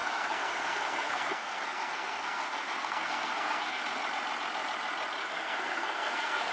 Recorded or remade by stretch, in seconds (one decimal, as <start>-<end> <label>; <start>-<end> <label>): 0.0-3.8 remade; 3.8-5.2 recorded; 5.2-6.5 remade